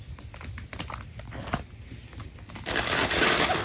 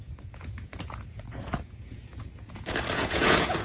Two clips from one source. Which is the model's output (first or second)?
second